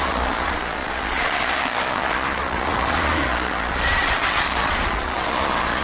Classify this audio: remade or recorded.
remade